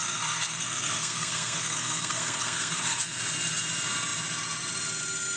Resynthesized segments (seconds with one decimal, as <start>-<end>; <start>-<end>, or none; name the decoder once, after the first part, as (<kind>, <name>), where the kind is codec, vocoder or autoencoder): 0.0-3.2 (codec, SNAC)